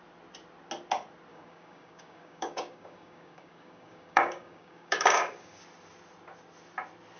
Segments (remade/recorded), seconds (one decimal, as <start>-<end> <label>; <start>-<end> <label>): 0.0-1.3 recorded; 1.3-5.6 remade; 5.6-7.2 recorded